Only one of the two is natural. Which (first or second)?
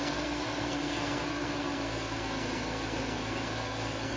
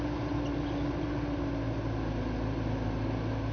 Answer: second